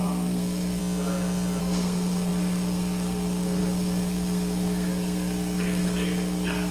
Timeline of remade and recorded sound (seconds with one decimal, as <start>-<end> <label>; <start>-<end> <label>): 0.0-0.8 remade; 0.8-1.6 recorded; 1.6-6.7 remade